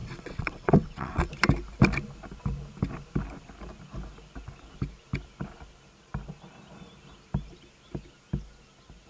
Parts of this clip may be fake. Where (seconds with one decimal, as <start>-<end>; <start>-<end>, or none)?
0.0-1.3